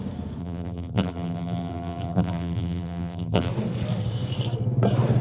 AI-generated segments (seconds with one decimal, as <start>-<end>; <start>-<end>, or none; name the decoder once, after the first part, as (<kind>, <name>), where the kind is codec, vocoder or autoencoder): 0.4-3.5 (vocoder, BigVGAN v2)